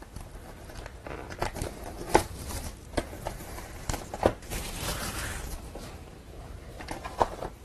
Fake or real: fake